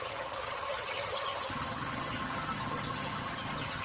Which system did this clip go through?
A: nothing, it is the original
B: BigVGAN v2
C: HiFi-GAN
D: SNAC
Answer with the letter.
C